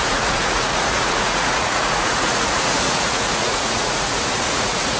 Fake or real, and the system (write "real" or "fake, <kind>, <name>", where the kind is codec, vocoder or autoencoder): fake, vocoder, Vocos